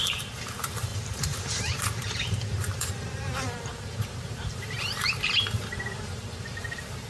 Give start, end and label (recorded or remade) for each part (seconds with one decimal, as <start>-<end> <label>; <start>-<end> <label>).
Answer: 0.0-7.1 remade